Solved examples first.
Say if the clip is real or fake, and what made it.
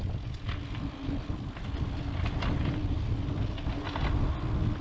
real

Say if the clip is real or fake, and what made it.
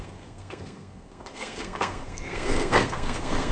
fake, codec, SNAC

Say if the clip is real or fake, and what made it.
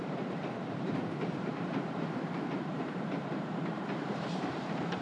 fake, vocoder, BigVGAN v2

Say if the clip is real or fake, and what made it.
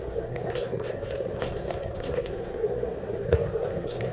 fake, codec, SNAC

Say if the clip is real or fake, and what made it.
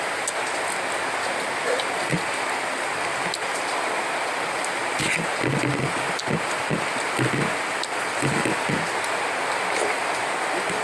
real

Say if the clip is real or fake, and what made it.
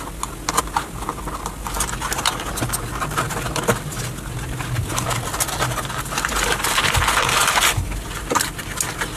real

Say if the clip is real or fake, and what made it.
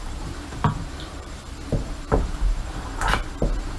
fake, vocoder, BigVGAN v2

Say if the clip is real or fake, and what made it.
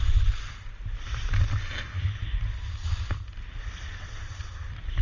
real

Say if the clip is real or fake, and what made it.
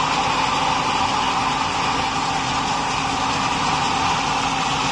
real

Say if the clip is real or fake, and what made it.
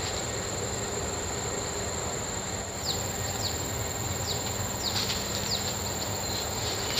fake, vocoder, BigVGAN v2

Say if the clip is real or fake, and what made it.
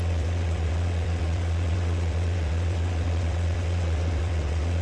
fake, vocoder, WaveNeXt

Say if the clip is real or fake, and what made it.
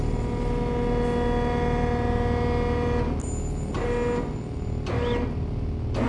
real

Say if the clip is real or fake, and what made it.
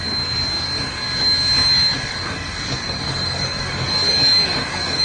fake, codec, DAC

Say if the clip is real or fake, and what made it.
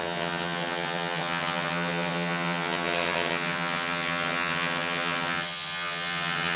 fake, vocoder, HiFi-GAN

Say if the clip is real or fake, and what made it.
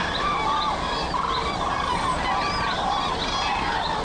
real